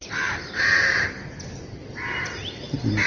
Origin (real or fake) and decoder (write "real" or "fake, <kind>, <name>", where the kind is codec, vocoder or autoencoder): fake, vocoder, BigVGAN v2